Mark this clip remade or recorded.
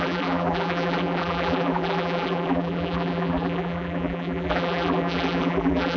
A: remade